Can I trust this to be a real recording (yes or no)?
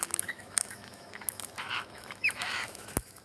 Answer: no